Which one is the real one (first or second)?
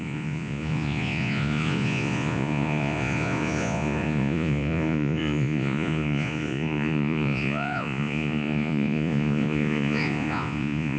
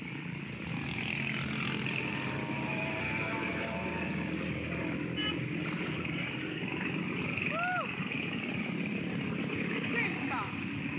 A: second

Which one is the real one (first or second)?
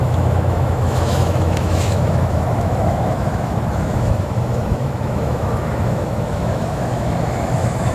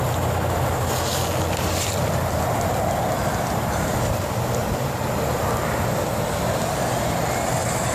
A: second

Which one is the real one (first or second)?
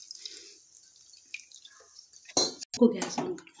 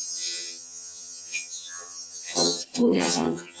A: first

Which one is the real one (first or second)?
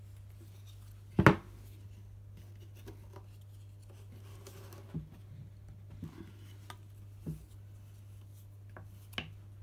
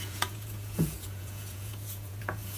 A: first